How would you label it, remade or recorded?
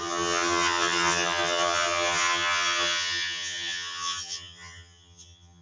remade